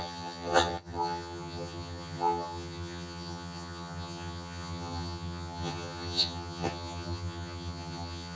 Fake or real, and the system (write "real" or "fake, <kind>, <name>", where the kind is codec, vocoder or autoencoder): fake, vocoder, HiFi-GAN